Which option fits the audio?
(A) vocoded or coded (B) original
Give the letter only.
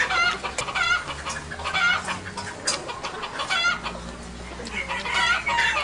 B